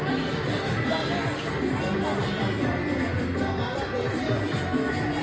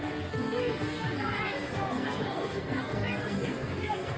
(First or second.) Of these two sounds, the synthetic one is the second